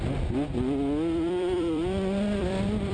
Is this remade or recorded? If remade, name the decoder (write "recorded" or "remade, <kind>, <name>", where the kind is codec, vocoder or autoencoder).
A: remade, vocoder, BigVGAN v2